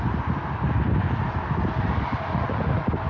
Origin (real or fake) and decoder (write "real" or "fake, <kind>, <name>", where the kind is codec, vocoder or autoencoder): real